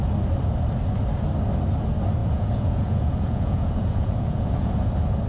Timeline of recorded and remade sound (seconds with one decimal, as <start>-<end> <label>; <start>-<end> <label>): 0.0-2.2 recorded; 2.2-4.7 remade; 4.7-5.3 recorded

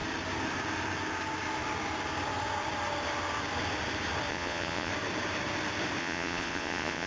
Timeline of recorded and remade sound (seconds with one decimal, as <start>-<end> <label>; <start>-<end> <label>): 0.0-4.3 recorded; 4.3-4.9 remade; 4.9-6.0 recorded; 6.0-7.1 remade

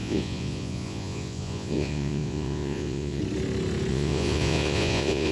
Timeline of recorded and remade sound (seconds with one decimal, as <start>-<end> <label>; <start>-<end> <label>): 0.0-3.2 remade; 3.2-3.9 recorded; 3.9-5.3 remade

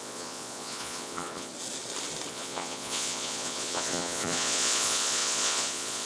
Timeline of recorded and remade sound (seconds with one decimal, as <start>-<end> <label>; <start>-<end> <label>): 0.0-1.5 remade; 1.5-2.3 recorded; 2.3-6.1 remade

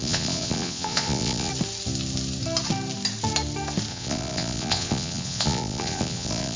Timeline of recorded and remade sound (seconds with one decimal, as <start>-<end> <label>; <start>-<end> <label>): 0.0-1.5 remade; 1.5-3.9 recorded; 3.9-6.6 remade

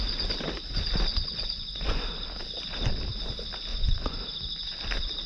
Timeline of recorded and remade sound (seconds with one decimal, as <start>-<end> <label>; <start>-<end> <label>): 0.0-1.1 recorded; 1.1-2.0 remade; 2.0-3.7 recorded; 3.7-4.2 remade; 4.2-5.3 recorded

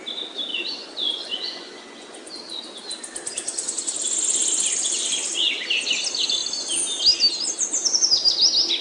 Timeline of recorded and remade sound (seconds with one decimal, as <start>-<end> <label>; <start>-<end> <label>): 0.0-0.5 recorded; 0.5-2.3 remade; 2.3-8.8 recorded

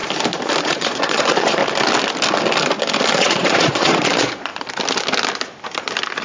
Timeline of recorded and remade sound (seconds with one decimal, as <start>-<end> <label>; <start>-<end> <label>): 0.0-0.6 recorded; 0.6-1.6 remade; 1.6-3.2 recorded; 3.2-4.5 remade; 4.5-6.2 recorded